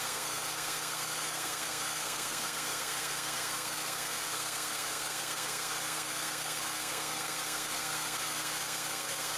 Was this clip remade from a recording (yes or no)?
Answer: yes